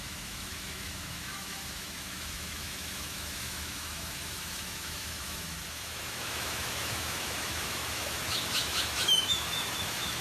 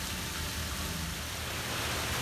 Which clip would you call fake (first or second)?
first